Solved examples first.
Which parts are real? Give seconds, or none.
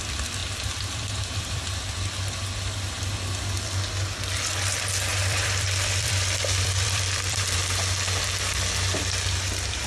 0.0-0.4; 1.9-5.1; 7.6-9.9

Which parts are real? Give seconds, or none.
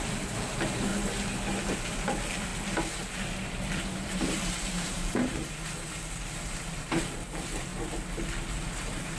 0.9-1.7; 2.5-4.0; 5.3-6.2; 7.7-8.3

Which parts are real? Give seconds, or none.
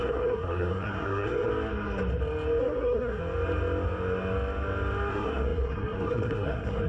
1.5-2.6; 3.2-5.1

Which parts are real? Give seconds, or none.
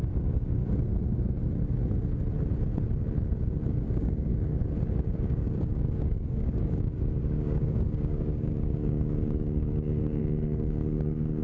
0.6-3.8; 4.3-5.1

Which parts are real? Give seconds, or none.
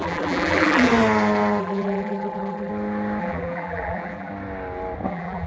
0.9-1.6; 2.7-3.2; 4.3-5.1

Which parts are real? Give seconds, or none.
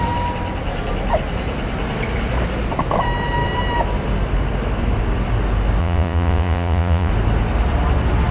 0.0-5.8; 7.1-8.3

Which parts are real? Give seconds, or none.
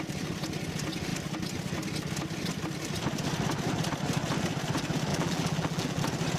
0.0-5.1; 6.0-6.4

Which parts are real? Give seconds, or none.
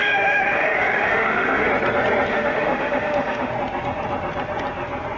1.7-2.3; 3.5-5.2